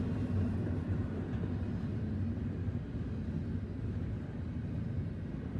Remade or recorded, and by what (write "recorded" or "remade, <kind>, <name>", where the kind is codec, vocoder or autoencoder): recorded